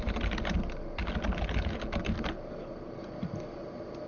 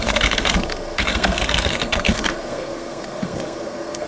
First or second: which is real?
first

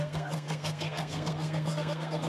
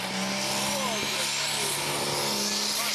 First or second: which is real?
second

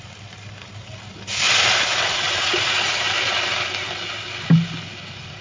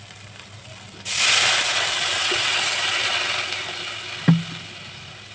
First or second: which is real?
second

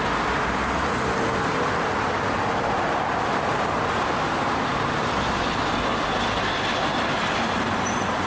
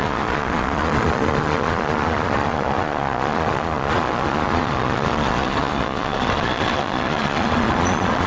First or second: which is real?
first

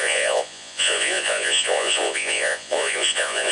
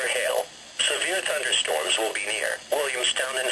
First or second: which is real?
second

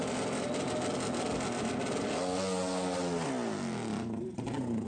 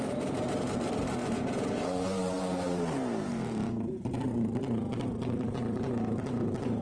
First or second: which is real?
first